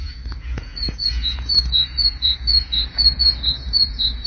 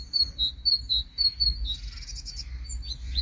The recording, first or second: second